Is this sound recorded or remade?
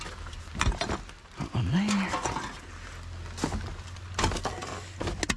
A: recorded